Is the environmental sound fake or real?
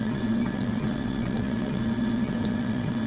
fake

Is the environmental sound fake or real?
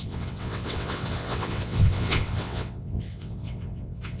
fake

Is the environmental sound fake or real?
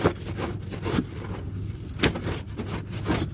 real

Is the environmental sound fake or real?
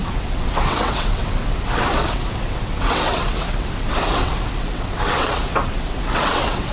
fake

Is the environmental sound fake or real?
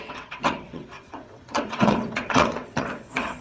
fake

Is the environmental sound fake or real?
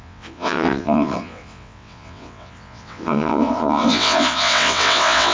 fake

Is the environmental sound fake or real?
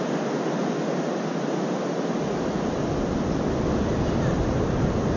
real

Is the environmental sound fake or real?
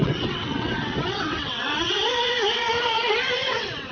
fake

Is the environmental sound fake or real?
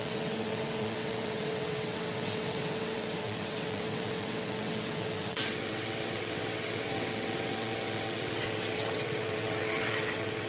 fake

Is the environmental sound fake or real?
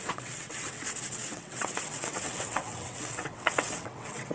fake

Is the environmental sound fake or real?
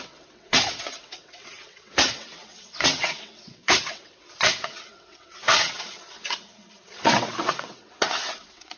fake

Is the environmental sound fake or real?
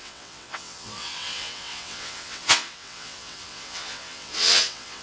fake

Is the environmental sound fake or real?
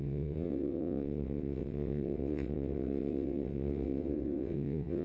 fake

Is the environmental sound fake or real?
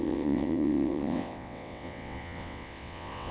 fake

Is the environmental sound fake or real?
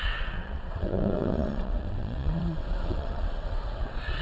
fake